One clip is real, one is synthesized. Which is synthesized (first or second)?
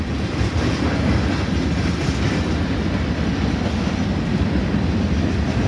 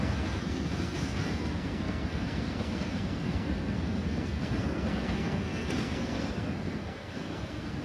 second